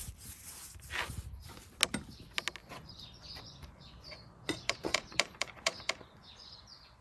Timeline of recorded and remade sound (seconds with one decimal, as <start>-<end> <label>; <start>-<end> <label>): 0.0-2.6 recorded; 2.6-7.0 remade

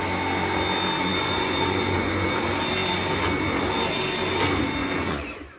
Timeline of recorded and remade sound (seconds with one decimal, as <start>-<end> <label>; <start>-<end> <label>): 0.0-1.1 recorded; 1.1-2.3 remade; 2.3-4.8 recorded; 4.8-5.6 remade

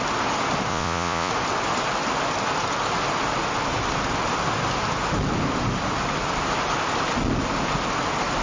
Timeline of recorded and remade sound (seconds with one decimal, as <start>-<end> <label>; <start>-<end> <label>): 0.0-0.7 recorded; 0.7-1.3 remade; 1.3-8.4 recorded

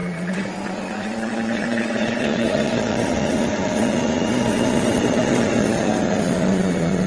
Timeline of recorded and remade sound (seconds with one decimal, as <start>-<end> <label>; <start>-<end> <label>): 0.0-7.1 remade

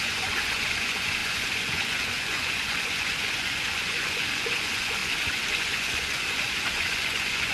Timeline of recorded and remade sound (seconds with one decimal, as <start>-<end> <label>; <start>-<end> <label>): 0.0-7.5 remade

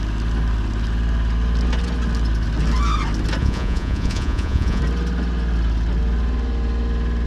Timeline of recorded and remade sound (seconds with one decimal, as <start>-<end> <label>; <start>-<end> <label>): 0.0-3.4 recorded; 3.4-4.8 remade; 4.8-7.3 recorded

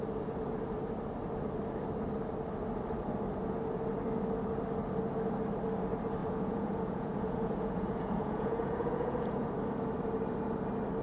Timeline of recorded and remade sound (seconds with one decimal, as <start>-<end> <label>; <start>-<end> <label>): 0.0-6.2 recorded; 6.2-9.5 remade; 9.5-11.0 recorded

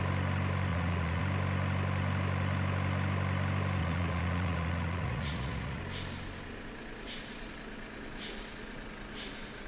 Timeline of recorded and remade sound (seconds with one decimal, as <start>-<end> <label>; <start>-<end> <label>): 0.0-0.7 recorded; 0.7-1.2 remade; 1.2-3.8 recorded; 3.8-5.8 remade; 5.8-9.7 recorded